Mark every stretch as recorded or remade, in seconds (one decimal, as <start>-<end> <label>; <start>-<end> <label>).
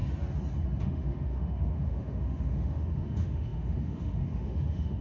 0.0-0.8 recorded; 0.8-5.0 remade